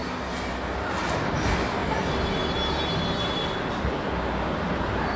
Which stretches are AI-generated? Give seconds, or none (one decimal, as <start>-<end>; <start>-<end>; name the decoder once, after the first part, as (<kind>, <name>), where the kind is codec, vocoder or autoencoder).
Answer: none